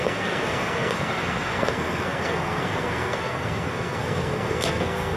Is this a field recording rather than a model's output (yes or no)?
no